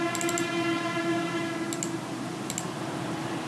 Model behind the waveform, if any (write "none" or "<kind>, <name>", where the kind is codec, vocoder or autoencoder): none